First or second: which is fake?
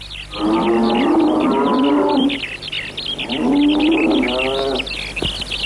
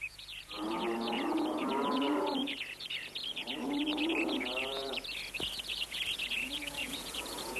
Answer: second